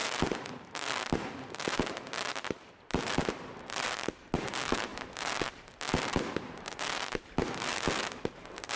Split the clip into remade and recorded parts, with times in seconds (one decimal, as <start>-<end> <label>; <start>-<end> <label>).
0.0-8.8 recorded